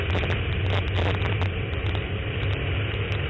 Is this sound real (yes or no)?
yes